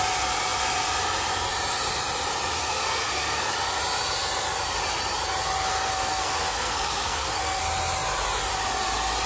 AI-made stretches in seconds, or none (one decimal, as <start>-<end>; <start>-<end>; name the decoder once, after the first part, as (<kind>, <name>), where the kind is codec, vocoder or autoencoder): 2.6-3.5 (codec, SNAC); 5.7-7.6

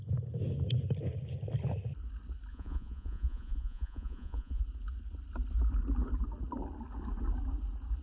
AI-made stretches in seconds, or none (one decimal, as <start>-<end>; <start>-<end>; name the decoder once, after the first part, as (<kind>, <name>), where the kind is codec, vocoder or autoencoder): 2.5-4.6 (vocoder, Vocos)

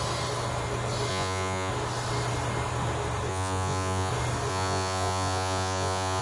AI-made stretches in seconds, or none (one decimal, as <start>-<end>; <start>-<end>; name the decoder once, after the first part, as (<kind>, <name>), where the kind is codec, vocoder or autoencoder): 1.1-1.7 (vocoder, Vocos); 3.3-4.1; 4.5-6.2

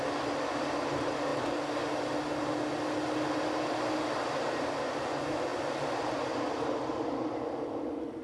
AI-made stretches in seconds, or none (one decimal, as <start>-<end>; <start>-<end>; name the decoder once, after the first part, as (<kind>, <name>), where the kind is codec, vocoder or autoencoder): none